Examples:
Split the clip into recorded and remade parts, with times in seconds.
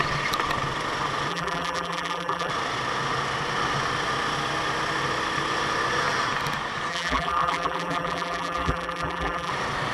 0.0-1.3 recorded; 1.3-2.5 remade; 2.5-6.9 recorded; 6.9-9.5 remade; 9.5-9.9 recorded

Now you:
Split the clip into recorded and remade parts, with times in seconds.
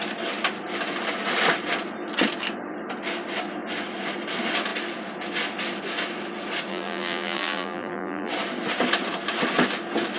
0.0-6.7 recorded; 6.7-8.3 remade; 8.3-10.2 recorded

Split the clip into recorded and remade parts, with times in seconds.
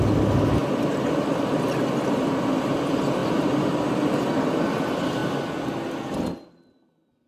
0.0-3.2 recorded; 3.2-3.7 remade; 3.7-7.3 recorded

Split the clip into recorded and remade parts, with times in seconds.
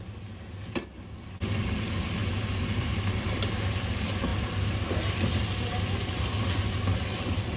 0.0-2.2 recorded; 2.2-3.2 remade; 3.2-7.6 recorded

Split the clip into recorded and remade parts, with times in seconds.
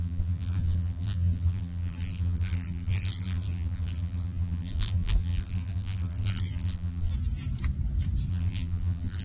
0.0-7.1 remade; 7.1-8.3 recorded; 8.3-9.2 remade